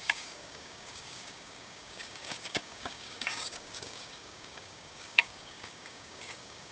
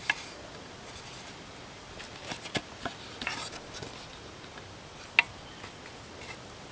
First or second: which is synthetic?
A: first